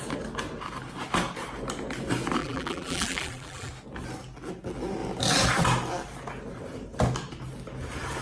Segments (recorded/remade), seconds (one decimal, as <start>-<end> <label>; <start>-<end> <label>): 0.0-2.4 recorded; 2.4-3.7 remade; 3.7-8.2 recorded